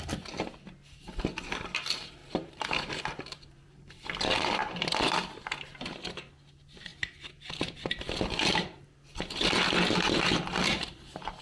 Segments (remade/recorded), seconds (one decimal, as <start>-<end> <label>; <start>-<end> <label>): 0.0-2.2 recorded; 2.2-3.0 remade; 3.0-11.4 recorded